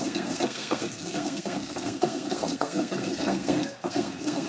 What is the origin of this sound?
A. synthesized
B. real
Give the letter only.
A